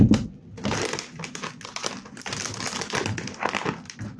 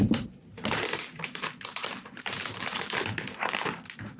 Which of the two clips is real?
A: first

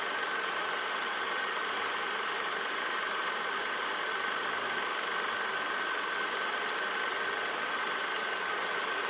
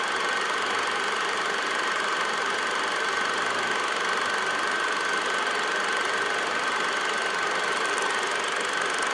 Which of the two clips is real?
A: first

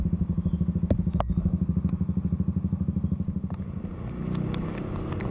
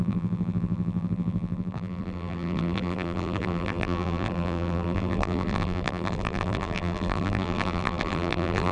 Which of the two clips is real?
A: first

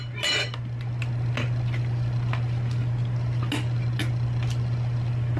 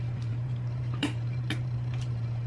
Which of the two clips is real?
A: first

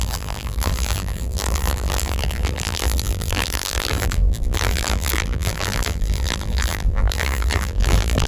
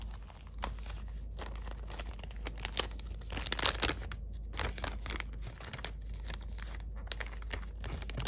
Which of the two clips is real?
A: second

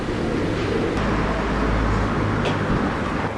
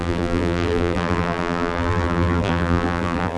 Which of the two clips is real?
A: first